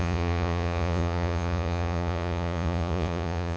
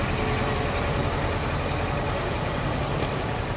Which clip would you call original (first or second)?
second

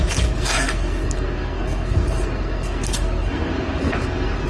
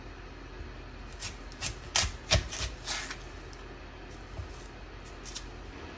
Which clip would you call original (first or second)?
second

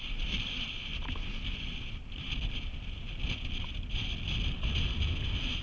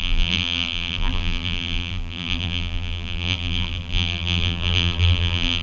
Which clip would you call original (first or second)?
first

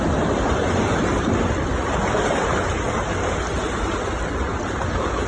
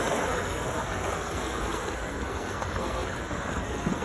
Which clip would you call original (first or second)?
first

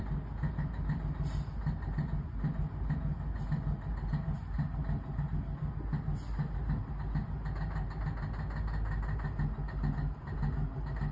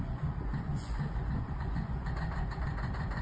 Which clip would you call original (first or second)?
first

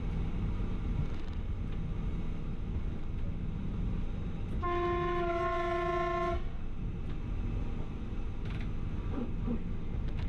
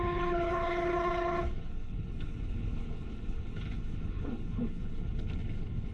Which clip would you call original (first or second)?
first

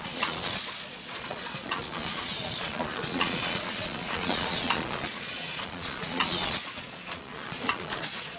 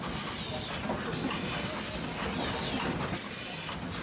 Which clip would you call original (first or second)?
second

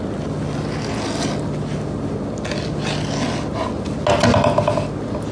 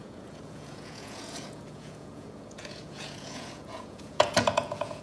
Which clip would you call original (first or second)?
first